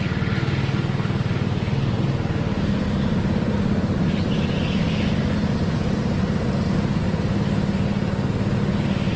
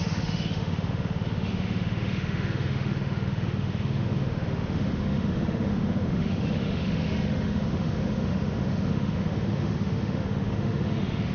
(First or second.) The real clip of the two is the first